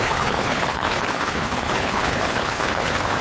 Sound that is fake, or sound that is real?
fake